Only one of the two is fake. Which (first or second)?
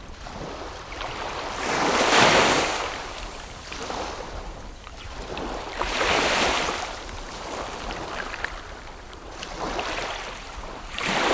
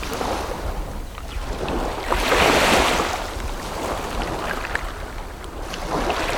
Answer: first